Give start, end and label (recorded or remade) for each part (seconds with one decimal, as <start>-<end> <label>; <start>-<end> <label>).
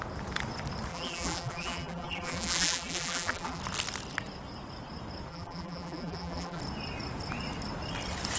0.0-0.9 recorded; 0.9-3.6 remade; 3.6-5.3 recorded; 5.3-6.6 remade; 6.6-8.4 recorded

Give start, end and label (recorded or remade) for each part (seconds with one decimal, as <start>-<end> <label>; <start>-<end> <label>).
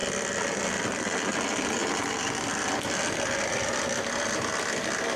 0.0-5.2 recorded